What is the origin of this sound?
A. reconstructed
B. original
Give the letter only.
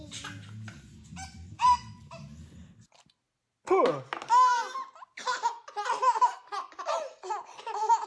B